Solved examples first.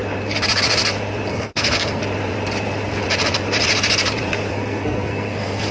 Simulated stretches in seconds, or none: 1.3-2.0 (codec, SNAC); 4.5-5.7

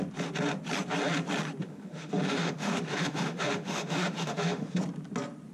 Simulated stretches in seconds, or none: 1.6-4.8 (autoencoder, DAC-VAE)